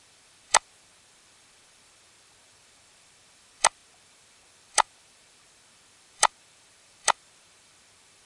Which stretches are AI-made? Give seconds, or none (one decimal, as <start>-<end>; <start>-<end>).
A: 0.0-8.3